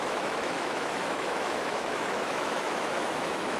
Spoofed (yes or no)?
yes